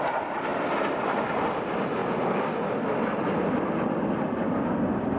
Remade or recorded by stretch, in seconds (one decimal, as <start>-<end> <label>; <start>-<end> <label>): 0.0-2.0 remade; 2.0-5.2 recorded